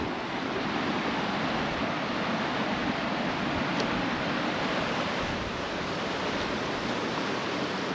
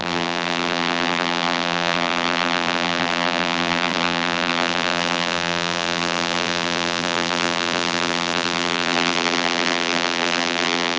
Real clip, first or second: first